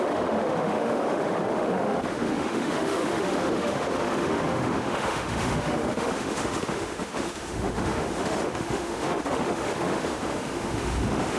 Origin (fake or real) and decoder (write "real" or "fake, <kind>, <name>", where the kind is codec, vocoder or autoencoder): fake, autoencoder, DAC-VAE